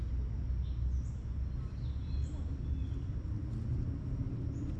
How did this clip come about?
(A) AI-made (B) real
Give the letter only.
B